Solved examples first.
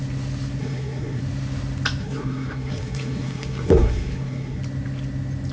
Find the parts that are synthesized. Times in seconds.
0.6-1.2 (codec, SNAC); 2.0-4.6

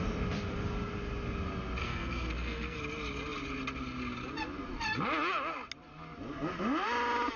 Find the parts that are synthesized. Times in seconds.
1.8-2.8 (codec, SNAC)